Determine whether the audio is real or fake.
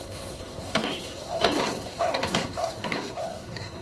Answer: fake